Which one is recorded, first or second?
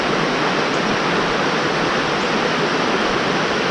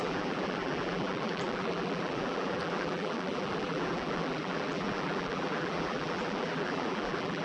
first